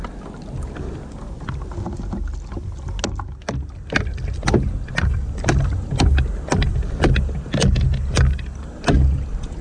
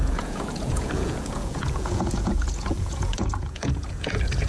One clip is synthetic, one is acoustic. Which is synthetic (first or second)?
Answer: second